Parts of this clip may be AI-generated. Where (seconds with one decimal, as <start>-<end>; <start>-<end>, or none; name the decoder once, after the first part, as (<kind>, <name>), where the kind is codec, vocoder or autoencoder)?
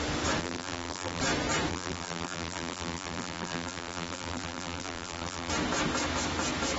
0.4-1.2 (vocoder, BigVGAN v2); 1.7-5.5